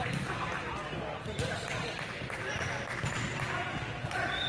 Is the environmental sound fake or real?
real